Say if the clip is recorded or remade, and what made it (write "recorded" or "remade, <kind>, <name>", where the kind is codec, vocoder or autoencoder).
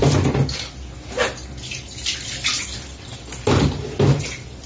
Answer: recorded